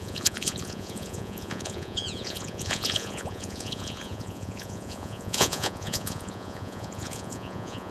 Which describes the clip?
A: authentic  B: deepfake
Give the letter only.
B